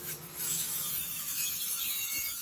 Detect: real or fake fake